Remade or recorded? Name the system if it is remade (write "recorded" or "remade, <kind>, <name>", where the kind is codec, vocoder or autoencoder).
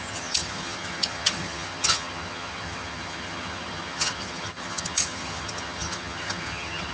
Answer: remade, vocoder, HiFi-GAN